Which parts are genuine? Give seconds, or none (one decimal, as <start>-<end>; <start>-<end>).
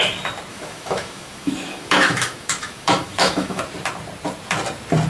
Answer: 0.0-0.5; 3.6-5.1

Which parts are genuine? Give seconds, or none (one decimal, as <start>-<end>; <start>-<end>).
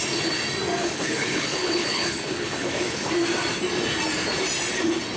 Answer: 0.0-0.8; 3.1-5.2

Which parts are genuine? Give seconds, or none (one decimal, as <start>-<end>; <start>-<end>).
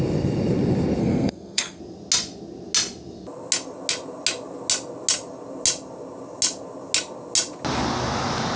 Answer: 0.0-1.0; 1.8-8.6